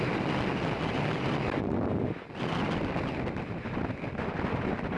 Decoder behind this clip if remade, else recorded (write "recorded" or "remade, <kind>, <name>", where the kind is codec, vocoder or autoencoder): recorded